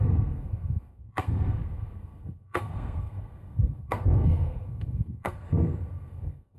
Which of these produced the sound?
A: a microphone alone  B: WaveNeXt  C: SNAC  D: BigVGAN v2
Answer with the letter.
C